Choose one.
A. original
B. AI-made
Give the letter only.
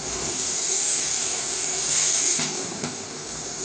B